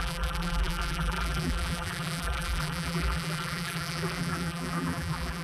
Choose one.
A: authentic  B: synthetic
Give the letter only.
B